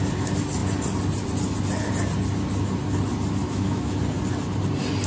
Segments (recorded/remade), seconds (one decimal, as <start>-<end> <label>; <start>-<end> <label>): 0.0-3.4 recorded; 3.4-4.0 remade; 4.0-5.1 recorded

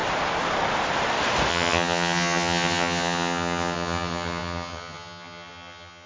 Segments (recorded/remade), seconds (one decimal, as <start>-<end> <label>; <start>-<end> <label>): 0.0-1.5 recorded; 1.5-6.1 remade

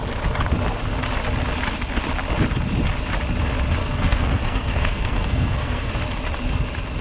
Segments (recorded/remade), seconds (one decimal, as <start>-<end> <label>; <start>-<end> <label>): 0.0-3.8 recorded; 3.8-5.9 remade; 5.9-7.0 recorded

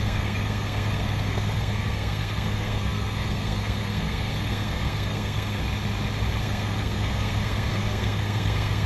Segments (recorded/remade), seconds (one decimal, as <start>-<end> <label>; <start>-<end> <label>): 0.0-5.6 remade; 5.6-6.4 recorded; 6.4-8.9 remade

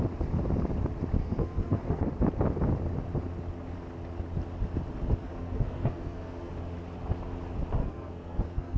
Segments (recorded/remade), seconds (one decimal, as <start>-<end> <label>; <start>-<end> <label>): 0.0-1.2 recorded; 1.2-2.1 remade; 2.1-5.2 recorded; 5.2-6.5 remade; 6.5-7.8 recorded; 7.8-8.8 remade